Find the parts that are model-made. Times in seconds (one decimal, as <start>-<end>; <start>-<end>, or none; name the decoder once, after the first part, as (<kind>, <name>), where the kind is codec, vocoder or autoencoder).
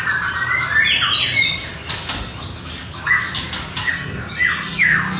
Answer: 1.7-3.9 (codec, DAC); 4.7-5.2